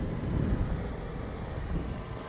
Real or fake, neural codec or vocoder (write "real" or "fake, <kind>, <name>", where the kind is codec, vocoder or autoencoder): real